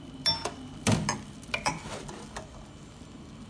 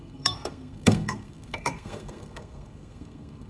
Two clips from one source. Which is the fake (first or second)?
second